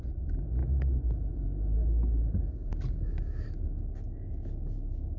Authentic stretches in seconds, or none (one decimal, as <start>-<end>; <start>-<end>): 0.0-0.6; 1.3-5.2